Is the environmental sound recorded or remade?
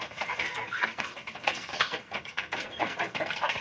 remade